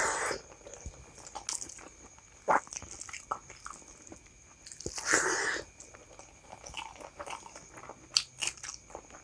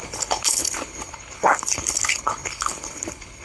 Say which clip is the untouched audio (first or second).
first